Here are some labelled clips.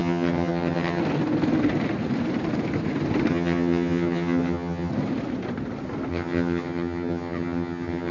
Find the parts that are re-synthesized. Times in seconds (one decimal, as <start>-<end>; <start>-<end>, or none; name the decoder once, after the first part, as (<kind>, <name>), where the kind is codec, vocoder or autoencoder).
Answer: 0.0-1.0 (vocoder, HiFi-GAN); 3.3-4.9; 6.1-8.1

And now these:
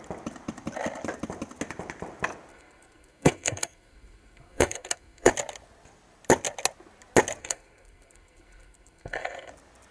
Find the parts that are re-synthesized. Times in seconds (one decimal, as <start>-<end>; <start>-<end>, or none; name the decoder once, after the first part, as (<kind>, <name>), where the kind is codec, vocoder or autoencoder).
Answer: 2.5-5.3 (codec, SNAC); 7.4-9.5

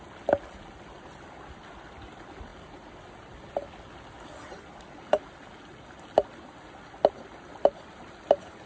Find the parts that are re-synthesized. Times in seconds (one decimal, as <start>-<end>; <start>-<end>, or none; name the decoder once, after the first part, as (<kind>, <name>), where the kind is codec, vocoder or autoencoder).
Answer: none

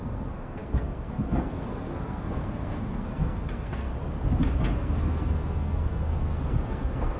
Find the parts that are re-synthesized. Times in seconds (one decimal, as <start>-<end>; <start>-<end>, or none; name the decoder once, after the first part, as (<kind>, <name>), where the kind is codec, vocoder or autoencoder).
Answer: 0.0-3.9 (codec, SNAC); 4.6-7.2

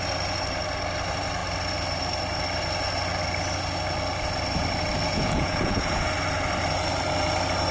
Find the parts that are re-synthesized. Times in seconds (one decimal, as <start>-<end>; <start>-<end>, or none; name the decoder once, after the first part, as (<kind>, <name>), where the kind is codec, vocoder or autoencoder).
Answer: 5.1-6.1 (vocoder, Vocos)

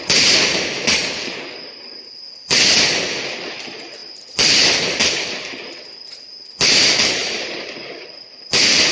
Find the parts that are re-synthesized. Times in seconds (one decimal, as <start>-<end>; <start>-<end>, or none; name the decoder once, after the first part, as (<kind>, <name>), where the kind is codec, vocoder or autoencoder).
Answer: 7.2-8.1 (vocoder, BigVGAN v2)